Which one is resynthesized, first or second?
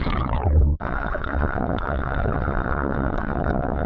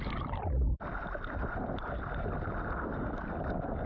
first